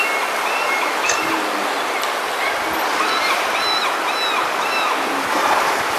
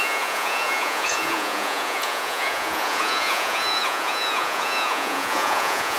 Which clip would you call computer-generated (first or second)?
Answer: second